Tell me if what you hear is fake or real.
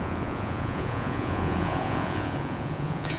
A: fake